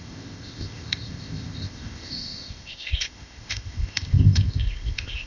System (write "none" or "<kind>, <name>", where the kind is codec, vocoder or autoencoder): codec, ZipCodec